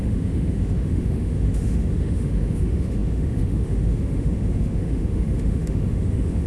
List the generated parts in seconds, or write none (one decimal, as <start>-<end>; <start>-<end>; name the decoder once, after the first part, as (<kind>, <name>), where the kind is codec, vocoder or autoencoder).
0.0-6.5 (autoencoder, DAC-VAE)

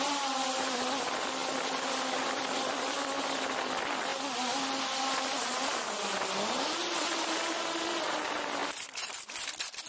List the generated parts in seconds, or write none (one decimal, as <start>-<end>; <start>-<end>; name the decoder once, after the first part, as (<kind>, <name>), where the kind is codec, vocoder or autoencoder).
none

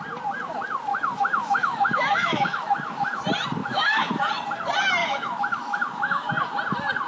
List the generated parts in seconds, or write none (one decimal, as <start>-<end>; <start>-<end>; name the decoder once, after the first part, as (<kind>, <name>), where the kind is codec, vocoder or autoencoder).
0.9-3.2 (autoencoder, DAC-VAE); 3.6-4.3; 5.0-6.3

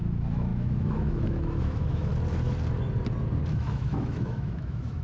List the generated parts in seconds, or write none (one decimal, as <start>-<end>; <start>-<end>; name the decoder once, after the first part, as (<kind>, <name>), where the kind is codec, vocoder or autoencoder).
0.0-2.1 (autoencoder, DAC-VAE); 3.5-5.0